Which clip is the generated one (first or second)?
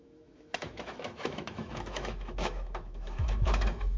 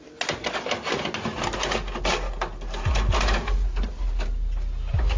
first